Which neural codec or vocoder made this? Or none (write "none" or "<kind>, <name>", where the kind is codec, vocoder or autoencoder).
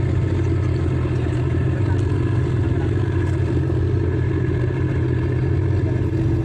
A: none